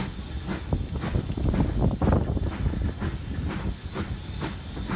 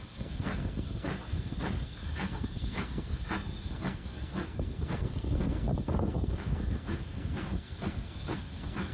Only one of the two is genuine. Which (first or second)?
first